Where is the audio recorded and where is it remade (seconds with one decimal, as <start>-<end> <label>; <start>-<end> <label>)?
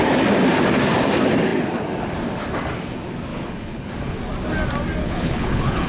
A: 0.0-3.3 recorded; 3.3-3.9 remade; 3.9-5.0 recorded; 5.0-5.9 remade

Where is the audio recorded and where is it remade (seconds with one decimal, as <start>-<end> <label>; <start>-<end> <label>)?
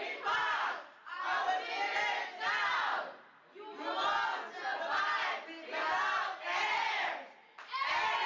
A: 0.0-0.4 recorded; 0.4-1.5 remade; 1.5-8.3 recorded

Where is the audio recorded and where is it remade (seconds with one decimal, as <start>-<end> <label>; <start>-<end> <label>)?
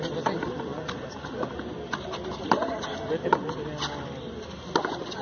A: 0.0-5.2 remade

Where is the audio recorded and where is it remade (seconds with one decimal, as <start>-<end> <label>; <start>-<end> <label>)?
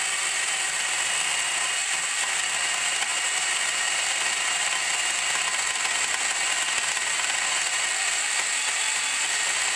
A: 0.0-1.8 recorded; 1.8-2.7 remade; 2.7-9.8 recorded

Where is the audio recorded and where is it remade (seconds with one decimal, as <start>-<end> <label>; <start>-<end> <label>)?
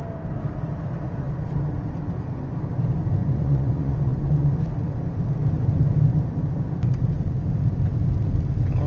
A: 0.0-3.2 recorded; 3.2-4.5 remade; 4.5-8.9 recorded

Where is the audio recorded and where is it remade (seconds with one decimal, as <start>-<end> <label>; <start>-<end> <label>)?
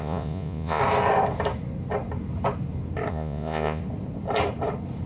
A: 0.0-0.8 remade; 0.8-3.1 recorded; 3.1-3.8 remade; 3.8-5.1 recorded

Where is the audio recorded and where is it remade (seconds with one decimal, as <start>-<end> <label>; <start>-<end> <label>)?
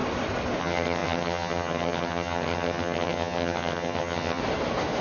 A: 0.0-0.6 recorded; 0.6-4.4 remade; 4.4-5.0 recorded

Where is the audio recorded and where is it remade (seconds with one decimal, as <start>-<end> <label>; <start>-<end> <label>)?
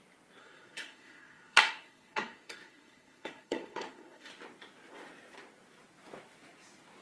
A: 0.0-0.4 recorded; 0.4-4.3 remade; 4.3-7.0 recorded